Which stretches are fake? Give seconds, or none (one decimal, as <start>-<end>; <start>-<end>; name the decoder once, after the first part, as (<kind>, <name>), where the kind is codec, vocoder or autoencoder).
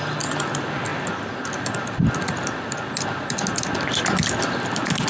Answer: none